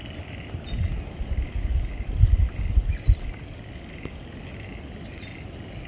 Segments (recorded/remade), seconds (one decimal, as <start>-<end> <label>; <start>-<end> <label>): 0.0-5.9 recorded